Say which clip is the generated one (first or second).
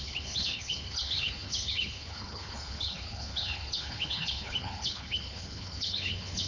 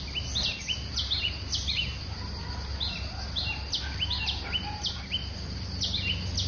first